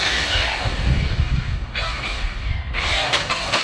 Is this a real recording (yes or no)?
no